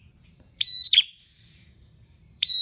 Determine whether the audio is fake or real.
fake